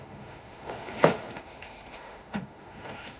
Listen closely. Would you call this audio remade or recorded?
remade